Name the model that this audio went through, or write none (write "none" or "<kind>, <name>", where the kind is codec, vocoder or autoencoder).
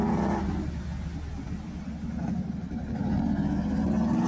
none